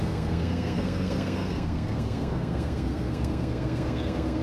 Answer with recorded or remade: remade